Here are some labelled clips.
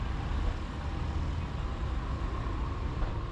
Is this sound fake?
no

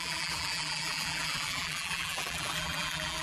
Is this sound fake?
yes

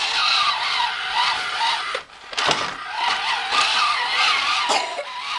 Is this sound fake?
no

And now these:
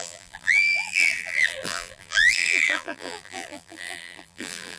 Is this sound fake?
yes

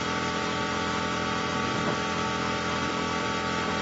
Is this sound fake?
no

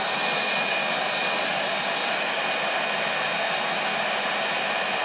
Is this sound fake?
no